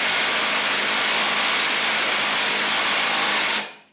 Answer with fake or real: real